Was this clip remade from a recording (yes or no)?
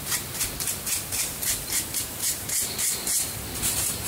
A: yes